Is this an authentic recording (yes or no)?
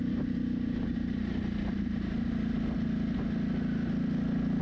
yes